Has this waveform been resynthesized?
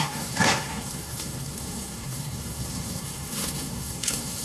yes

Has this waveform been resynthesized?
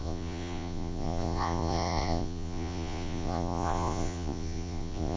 yes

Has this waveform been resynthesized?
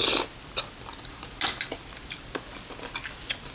no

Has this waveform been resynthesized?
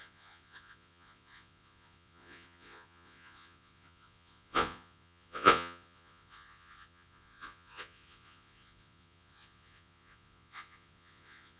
yes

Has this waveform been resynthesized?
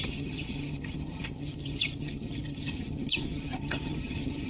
yes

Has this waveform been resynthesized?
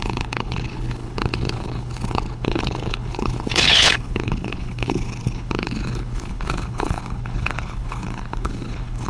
yes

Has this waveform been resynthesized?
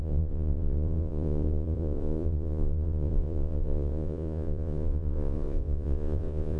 yes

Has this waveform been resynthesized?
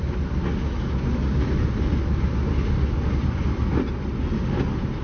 no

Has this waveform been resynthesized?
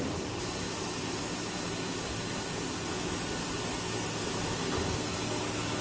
no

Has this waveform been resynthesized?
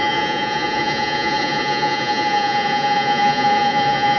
yes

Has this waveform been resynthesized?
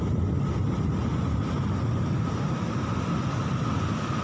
no